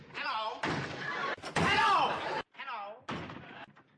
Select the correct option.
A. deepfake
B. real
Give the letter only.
B